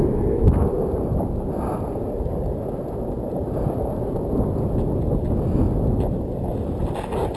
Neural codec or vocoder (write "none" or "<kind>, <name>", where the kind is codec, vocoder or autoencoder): none